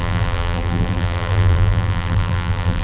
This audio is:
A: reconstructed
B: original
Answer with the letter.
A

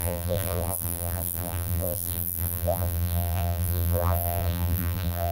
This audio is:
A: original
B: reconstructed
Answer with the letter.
B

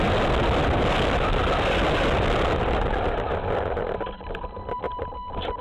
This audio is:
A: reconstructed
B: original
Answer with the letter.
B